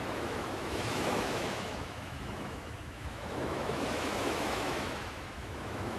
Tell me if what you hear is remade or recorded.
remade